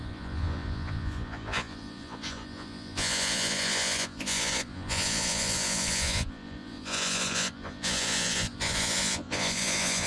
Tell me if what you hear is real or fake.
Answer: fake